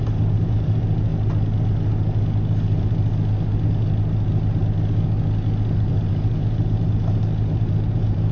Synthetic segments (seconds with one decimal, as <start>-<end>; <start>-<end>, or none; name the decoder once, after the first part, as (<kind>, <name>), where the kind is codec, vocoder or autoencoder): 0.0-1.1 (vocoder, BigVGAN v2); 5.9-8.3